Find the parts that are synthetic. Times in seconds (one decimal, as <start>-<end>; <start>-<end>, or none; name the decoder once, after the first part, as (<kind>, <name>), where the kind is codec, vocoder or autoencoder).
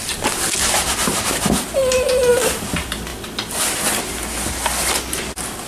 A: none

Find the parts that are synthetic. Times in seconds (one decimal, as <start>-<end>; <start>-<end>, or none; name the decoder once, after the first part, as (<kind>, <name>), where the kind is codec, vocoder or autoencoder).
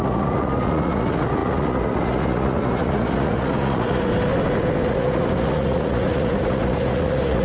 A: 0.0-4.1 (vocoder, Vocos); 4.9-7.4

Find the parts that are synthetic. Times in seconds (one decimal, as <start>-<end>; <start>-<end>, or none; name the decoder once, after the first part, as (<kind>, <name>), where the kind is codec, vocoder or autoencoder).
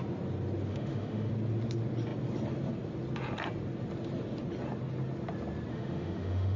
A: 0.7-1.3 (autoencoder, DAC-VAE); 5.7-6.6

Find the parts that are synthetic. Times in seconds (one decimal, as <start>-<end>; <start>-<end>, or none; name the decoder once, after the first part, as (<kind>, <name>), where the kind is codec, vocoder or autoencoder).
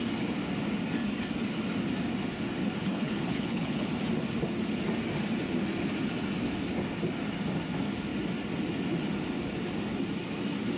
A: 2.8-3.9 (codec, HILCodec)